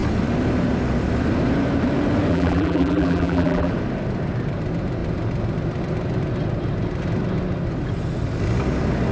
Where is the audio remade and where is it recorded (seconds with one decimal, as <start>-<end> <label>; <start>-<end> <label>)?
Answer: 0.0-2.3 recorded; 2.3-3.7 remade; 3.7-9.1 recorded